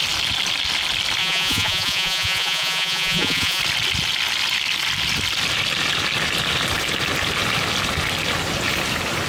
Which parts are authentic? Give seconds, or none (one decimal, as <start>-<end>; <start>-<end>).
0.0-1.2; 3.6-9.3

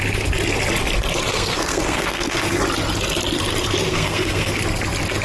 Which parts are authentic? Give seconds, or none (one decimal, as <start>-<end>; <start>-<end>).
0.0-1.3; 2.6-3.8; 4.5-5.2

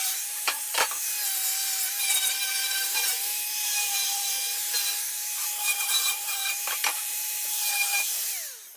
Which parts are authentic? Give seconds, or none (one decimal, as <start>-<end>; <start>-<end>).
0.7-2.6

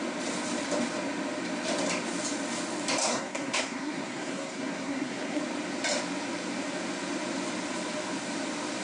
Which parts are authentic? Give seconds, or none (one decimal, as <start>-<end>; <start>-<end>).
0.0-3.0; 5.4-8.8